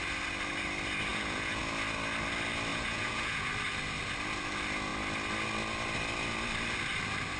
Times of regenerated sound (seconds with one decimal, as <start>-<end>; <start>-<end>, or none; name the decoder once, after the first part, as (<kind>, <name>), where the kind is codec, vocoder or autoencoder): 1.1-1.6 (vocoder, Vocos); 2.7-3.5